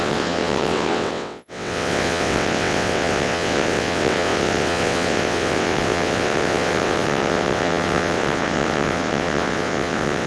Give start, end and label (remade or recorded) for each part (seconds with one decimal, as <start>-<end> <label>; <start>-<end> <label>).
0.0-10.3 remade